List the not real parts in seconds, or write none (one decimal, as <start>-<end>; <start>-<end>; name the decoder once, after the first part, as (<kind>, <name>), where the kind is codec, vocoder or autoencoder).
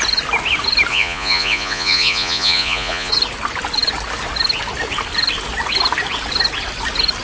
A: 0.9-3.1 (vocoder, Vocos)